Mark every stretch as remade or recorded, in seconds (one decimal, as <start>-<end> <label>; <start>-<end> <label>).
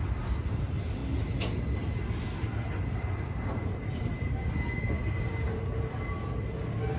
0.0-7.0 recorded